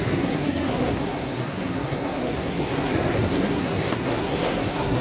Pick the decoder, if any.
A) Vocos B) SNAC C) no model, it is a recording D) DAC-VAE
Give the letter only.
B